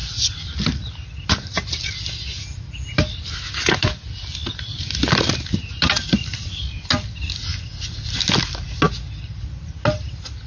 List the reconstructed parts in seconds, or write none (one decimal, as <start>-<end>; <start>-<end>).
none